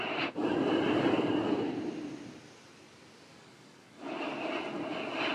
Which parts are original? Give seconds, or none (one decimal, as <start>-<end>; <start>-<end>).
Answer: 0.0-3.3; 4.4-5.3